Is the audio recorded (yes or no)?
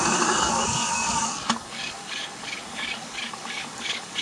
no